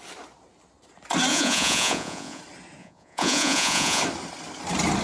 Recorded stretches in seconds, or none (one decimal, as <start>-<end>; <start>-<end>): 0.0-1.3; 2.4-2.8; 4.0-5.0